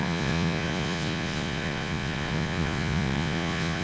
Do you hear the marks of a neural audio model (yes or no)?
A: yes